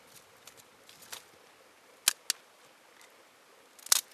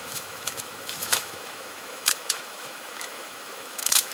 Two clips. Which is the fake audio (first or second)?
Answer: second